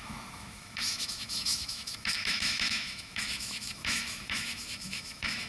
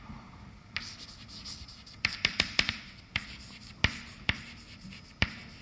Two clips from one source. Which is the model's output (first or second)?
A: first